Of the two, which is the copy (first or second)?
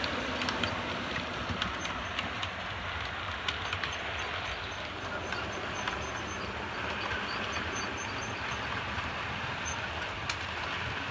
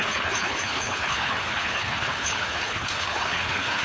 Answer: second